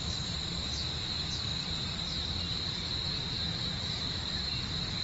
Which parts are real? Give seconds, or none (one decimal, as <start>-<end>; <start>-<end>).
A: 0.0-5.0